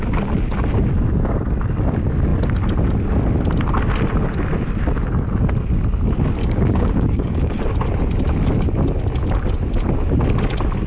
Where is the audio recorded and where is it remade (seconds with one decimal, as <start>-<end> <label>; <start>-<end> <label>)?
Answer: 0.0-6.4 recorded; 6.4-7.6 remade; 7.6-10.9 recorded